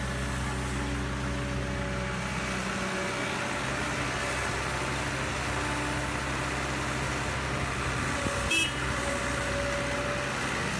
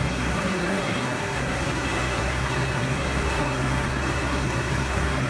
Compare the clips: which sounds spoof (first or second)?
second